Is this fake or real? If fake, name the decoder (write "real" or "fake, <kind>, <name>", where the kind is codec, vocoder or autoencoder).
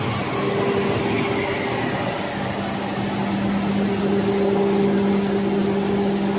real